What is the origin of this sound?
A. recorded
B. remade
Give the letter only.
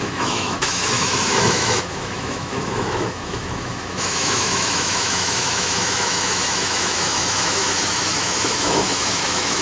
B